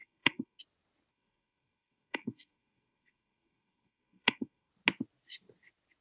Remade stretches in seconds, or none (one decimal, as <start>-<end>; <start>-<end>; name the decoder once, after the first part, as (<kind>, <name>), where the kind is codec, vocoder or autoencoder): 0.0-0.6 (codec, SNAC); 1.1-4.7